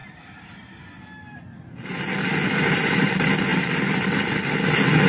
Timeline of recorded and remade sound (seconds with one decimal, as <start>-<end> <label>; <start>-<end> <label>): 0.0-3.0 remade; 3.0-3.5 recorded; 3.5-4.5 remade; 4.5-5.1 recorded